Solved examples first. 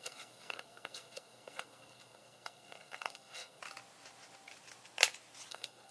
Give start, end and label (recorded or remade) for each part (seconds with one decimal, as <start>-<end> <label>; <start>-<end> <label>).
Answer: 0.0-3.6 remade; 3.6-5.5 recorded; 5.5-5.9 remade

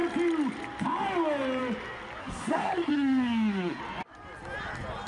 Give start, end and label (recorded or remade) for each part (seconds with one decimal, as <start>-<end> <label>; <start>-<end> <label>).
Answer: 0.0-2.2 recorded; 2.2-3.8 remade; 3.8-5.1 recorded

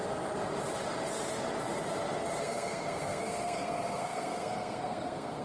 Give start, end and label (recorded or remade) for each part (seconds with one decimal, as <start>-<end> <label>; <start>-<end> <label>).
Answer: 0.0-2.4 recorded; 2.4-5.4 remade